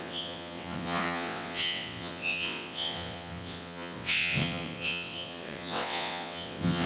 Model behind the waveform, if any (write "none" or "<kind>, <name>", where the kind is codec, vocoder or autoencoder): vocoder, WaveNeXt